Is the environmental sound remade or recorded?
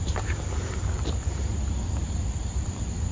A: remade